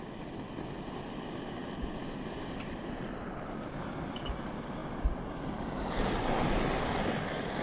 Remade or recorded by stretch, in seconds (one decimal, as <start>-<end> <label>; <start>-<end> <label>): 0.0-7.6 remade